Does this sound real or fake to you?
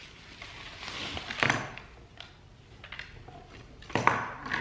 real